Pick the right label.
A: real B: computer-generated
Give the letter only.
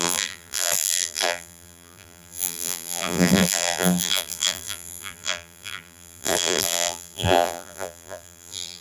B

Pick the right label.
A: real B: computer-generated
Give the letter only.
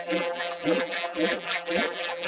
B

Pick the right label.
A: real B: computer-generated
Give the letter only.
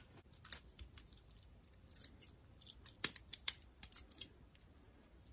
B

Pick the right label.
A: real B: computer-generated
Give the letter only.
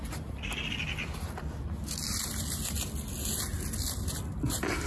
A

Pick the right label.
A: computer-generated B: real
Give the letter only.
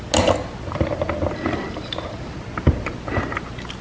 B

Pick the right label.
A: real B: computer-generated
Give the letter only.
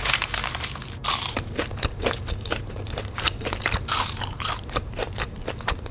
B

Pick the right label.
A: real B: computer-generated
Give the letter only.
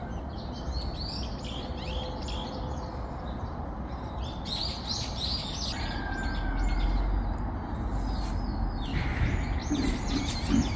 A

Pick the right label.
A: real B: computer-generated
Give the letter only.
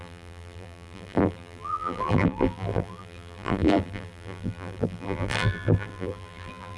B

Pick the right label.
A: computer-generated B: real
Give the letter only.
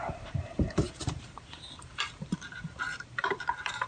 A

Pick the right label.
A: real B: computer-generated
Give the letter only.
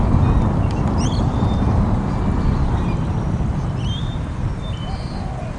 A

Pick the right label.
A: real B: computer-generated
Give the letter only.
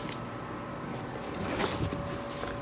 A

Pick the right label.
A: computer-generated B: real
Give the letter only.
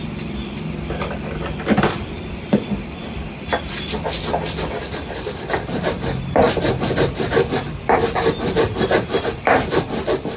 A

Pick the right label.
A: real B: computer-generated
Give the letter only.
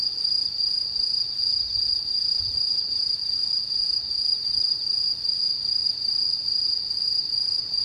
A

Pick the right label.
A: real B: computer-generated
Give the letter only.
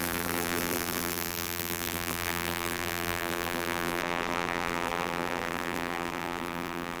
B